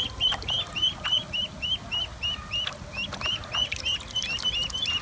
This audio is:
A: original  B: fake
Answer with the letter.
A